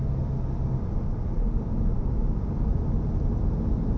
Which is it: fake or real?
real